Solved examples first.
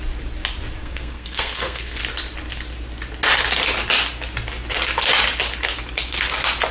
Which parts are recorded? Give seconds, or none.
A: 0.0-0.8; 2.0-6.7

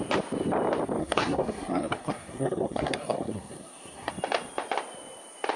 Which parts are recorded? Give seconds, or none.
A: 0.0-1.0; 4.1-5.6